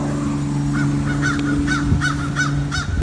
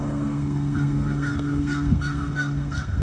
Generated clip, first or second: second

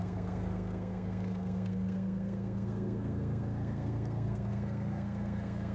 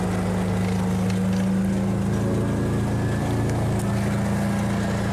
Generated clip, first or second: first